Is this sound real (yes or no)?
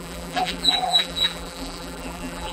no